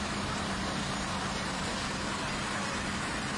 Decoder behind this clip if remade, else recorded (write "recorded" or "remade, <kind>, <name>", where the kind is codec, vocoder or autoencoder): recorded